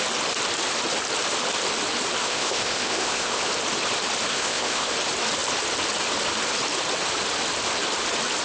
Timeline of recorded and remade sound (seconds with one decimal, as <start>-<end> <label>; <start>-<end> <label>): 0.0-2.2 recorded; 2.2-3.5 remade; 3.5-4.3 recorded; 4.3-4.9 remade; 4.9-8.4 recorded